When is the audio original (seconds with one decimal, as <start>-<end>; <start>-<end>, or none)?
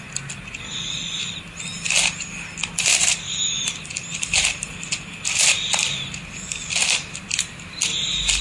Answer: 0.0-8.4